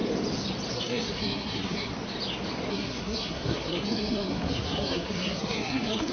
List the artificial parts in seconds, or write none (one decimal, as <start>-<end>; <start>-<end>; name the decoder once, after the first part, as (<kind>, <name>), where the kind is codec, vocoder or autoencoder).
0.7-1.9 (codec, SNAC); 2.7-6.1